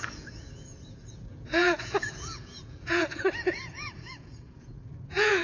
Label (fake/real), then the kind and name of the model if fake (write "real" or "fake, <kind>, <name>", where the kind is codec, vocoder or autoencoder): fake, vocoder, Vocos